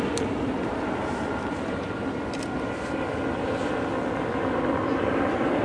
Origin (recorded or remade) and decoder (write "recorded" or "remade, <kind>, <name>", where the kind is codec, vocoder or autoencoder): recorded